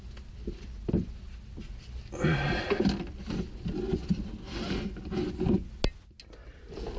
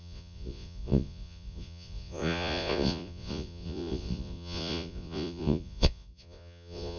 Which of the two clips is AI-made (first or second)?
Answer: second